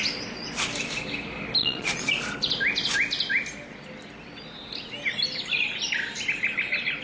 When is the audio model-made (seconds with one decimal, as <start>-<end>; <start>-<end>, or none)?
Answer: 1.6-2.1